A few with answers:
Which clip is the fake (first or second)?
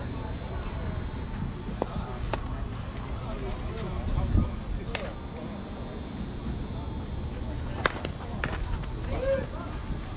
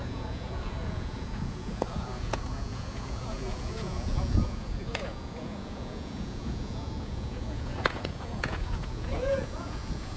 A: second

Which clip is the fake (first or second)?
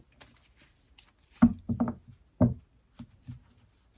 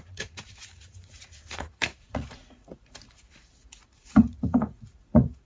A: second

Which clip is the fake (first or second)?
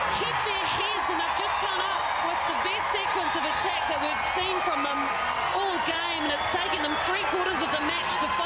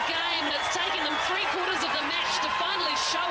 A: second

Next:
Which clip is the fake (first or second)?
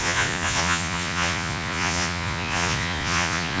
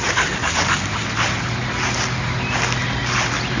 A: first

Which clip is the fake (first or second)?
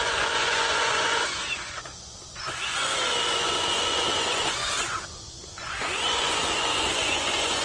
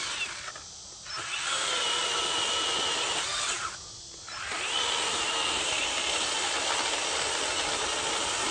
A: first